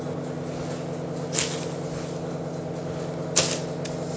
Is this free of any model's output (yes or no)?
yes